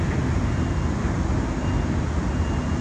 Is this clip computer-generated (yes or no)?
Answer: no